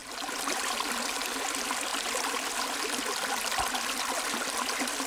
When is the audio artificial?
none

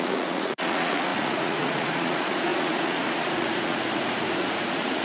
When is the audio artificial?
0.0-5.0 (vocoder, Vocos)

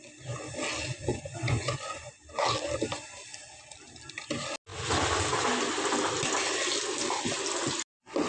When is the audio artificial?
1.1-2.1 (vocoder, Vocos)